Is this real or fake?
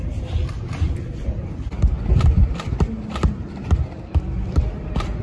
real